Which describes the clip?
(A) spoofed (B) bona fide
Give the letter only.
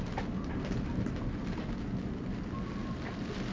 B